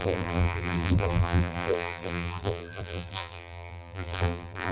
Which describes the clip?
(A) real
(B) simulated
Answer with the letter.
B